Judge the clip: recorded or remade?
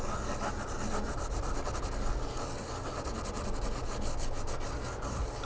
recorded